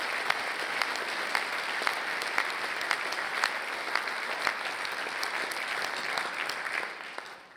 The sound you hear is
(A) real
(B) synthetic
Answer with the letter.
A